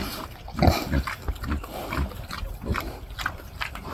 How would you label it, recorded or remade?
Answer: recorded